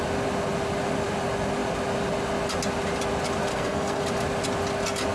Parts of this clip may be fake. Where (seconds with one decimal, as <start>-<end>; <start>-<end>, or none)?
3.5-4.0